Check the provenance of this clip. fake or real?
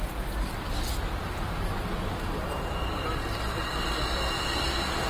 real